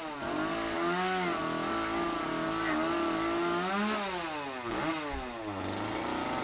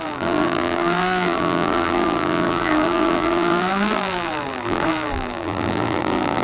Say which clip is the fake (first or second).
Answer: second